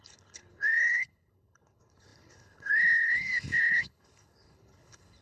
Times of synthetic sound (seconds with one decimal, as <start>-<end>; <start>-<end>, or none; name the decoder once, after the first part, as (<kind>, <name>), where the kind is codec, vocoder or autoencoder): 0.0-5.2 (codec, HILCodec)

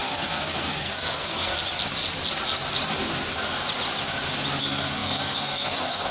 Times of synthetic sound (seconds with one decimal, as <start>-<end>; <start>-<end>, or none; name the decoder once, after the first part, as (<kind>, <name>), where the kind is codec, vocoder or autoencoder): 0.0-1.5 (codec, SNAC); 4.6-6.1

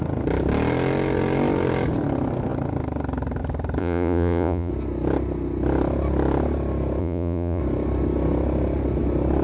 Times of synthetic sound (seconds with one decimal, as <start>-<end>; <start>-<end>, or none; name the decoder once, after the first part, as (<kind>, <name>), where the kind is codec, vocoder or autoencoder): 3.8-4.7 (vocoder, Vocos); 7.0-7.6

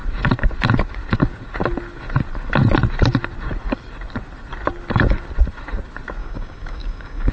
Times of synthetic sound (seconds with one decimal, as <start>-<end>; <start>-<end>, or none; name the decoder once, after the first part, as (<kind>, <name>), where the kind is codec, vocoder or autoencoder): 6.2-7.3 (codec, DAC)

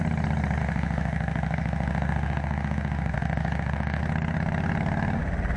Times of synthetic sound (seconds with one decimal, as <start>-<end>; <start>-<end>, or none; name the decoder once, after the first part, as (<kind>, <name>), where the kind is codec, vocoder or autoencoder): 0.6-4.0 (autoencoder, DAC-VAE)

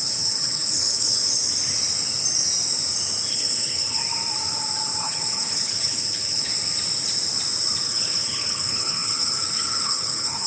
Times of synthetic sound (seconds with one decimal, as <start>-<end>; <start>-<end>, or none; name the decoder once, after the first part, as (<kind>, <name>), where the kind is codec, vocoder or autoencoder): 0.0-1.4 (codec, HILCodec); 3.3-4.0; 5.0-6.5; 7.8-10.5